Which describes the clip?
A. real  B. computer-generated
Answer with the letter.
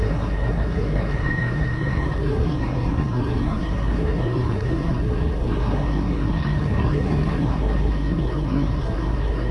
B